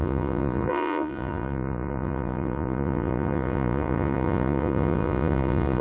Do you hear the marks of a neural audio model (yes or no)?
yes